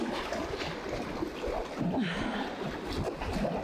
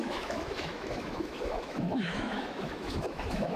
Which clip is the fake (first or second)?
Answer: second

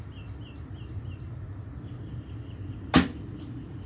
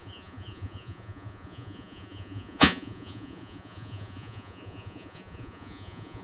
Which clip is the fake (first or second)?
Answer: second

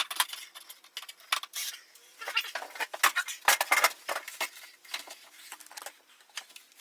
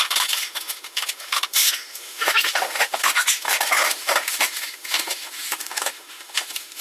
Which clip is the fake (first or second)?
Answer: second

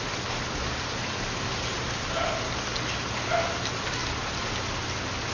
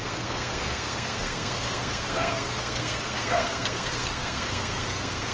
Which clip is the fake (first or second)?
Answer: second